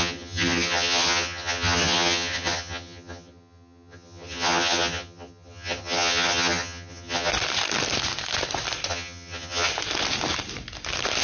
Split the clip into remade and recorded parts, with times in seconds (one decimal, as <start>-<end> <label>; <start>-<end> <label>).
0.0-7.3 remade; 7.3-8.9 recorded; 8.9-9.7 remade; 9.7-11.2 recorded